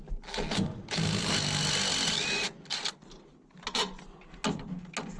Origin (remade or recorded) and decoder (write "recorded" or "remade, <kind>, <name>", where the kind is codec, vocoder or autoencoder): recorded